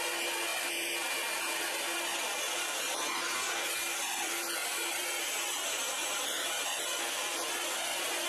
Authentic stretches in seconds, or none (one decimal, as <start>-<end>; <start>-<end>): 0.0-4.6; 7.0-8.3